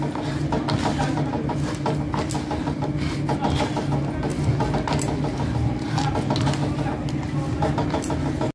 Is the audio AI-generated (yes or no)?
no